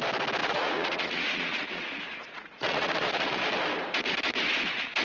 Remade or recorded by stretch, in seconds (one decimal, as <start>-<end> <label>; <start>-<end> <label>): 0.0-0.4 recorded; 0.4-3.4 remade; 3.4-5.0 recorded